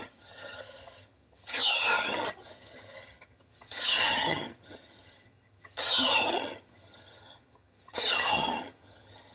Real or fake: fake